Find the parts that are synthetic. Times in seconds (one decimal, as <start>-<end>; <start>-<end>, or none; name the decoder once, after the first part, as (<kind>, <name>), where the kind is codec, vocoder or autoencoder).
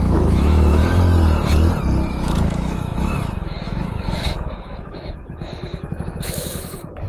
0.0-0.8 (autoencoder, DAC-VAE); 2.1-7.1